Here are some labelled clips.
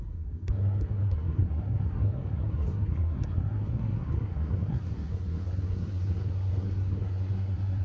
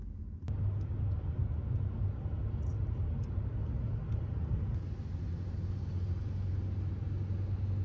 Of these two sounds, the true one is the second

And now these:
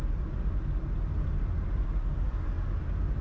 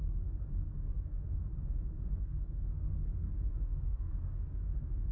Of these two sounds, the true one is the first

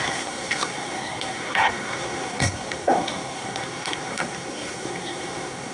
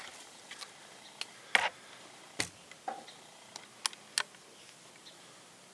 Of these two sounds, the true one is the second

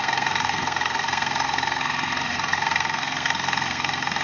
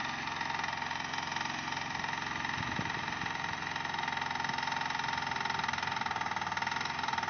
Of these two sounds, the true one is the second